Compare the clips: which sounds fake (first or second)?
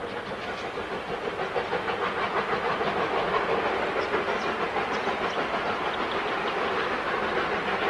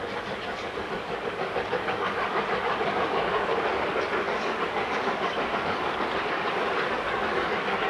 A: second